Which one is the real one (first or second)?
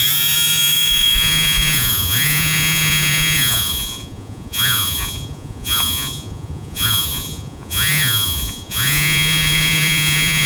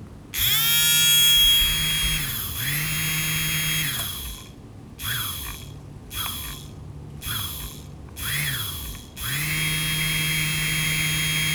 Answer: second